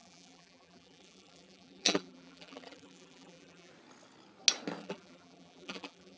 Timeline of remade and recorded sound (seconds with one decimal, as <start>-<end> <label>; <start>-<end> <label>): 0.0-3.7 remade; 3.7-4.8 recorded; 4.8-6.2 remade